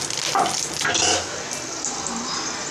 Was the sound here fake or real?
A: real